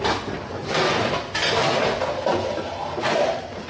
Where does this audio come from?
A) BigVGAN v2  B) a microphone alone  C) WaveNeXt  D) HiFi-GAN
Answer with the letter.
B